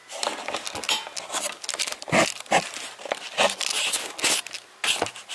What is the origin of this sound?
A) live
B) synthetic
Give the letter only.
A